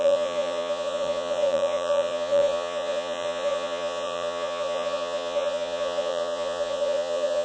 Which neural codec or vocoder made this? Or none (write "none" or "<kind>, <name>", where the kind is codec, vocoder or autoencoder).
vocoder, Vocos